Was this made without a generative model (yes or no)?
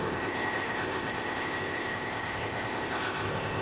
no